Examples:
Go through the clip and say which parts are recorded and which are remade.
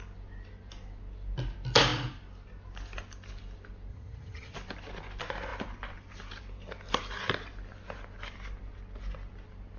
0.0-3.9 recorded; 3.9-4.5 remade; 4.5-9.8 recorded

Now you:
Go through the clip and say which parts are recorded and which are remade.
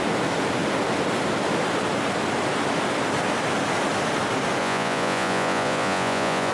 0.0-4.6 recorded; 4.6-6.5 remade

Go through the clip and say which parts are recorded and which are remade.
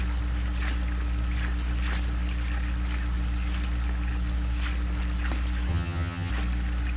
0.0-5.7 recorded; 5.7-6.3 remade; 6.3-7.0 recorded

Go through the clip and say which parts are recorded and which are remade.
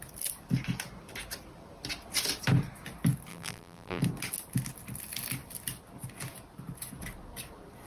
0.0-3.3 recorded; 3.3-4.0 remade; 4.0-7.9 recorded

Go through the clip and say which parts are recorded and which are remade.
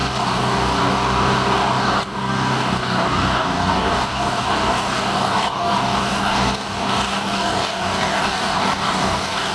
0.0-9.5 remade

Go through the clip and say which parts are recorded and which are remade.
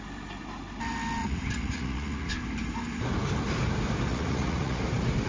0.0-1.2 recorded; 1.2-2.3 remade; 2.3-4.1 recorded; 4.1-4.8 remade; 4.8-5.3 recorded